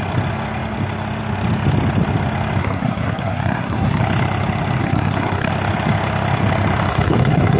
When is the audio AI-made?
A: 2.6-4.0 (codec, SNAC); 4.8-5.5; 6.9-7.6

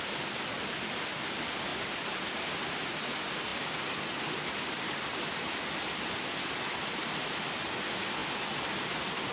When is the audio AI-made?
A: none

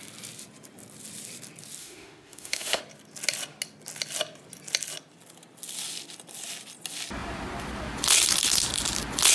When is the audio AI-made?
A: 1.8-2.8 (autoencoder, DAC-VAE)

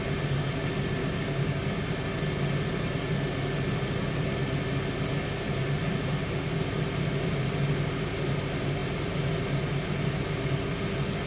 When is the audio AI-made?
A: 1.0-1.6 (codec, DAC)

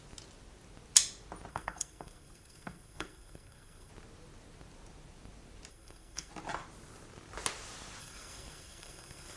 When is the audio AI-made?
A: 1.5-3.9 (codec, SNAC); 5.7-6.3; 8.0-9.4

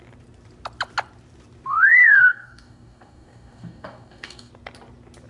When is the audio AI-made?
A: 1.7-4.5 (codec, DAC)

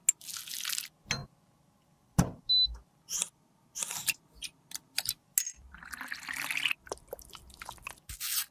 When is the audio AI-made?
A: none